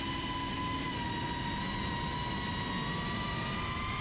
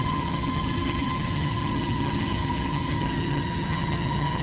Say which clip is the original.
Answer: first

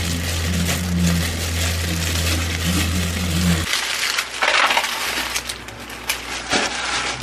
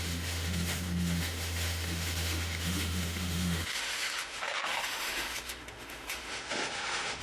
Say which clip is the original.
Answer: first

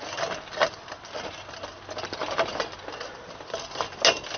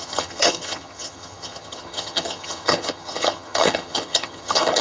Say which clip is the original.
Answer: first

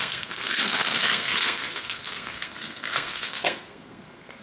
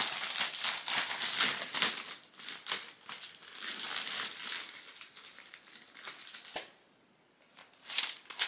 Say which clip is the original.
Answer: second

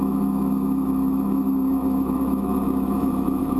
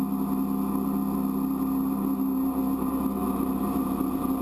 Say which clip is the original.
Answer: second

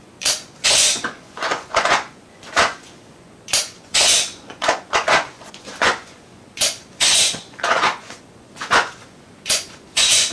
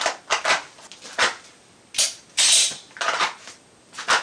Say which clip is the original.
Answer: second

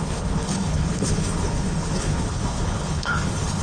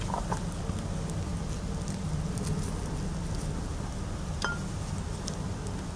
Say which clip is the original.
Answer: second